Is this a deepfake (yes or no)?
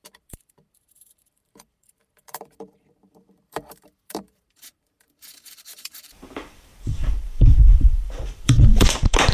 yes